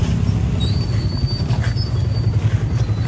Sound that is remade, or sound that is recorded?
recorded